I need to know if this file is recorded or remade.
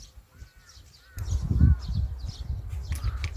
recorded